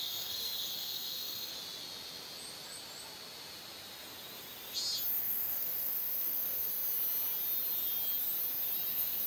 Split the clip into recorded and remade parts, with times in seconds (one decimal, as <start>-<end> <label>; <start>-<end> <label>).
0.0-1.5 remade; 1.5-5.2 recorded; 5.2-6.7 remade; 6.7-8.9 recorded; 8.9-9.3 remade